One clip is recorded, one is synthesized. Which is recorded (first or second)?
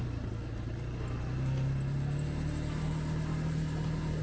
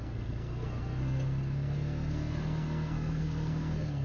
first